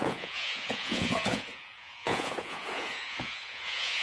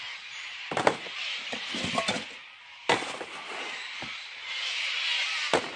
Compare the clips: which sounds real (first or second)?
second